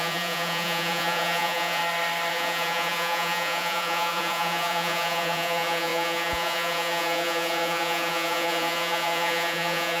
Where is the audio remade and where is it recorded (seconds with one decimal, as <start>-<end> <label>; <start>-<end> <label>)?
0.0-1.8 remade; 1.8-2.3 recorded; 2.3-10.0 remade